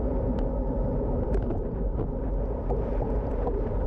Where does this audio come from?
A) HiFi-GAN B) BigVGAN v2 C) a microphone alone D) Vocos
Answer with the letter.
B